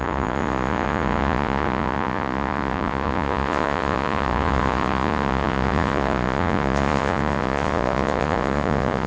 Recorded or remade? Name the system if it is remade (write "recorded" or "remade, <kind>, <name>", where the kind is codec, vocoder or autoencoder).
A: remade, vocoder, Vocos